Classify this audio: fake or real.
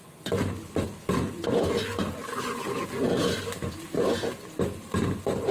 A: real